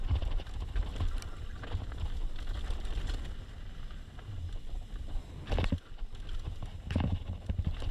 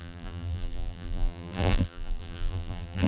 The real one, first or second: first